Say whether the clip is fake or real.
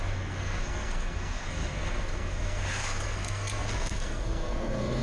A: fake